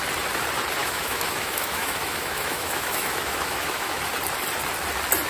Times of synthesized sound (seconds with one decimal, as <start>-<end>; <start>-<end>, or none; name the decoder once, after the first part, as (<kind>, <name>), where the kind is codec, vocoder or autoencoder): 0.8-4.0 (autoencoder, DAC-VAE)